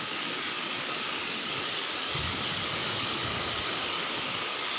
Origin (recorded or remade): remade